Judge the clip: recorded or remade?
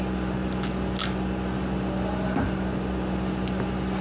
recorded